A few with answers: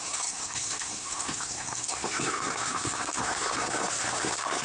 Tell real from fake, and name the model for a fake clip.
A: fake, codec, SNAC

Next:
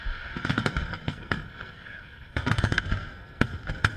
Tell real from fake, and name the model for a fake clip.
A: fake, codec, SNAC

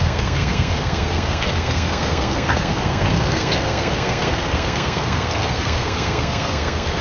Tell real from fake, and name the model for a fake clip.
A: fake, codec, SNAC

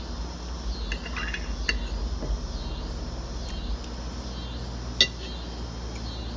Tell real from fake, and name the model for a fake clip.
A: real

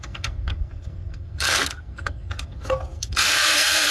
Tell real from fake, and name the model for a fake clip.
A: fake, codec, SNAC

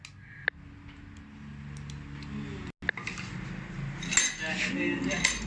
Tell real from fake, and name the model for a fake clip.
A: real